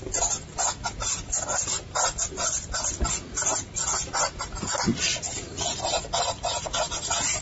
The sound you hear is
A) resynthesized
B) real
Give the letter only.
B